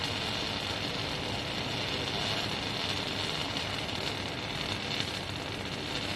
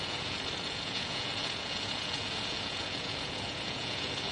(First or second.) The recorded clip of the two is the first